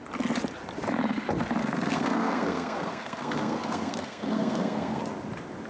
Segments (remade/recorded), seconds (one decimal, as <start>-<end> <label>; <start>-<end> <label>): 0.0-1.6 recorded; 1.6-5.0 remade; 5.0-5.7 recorded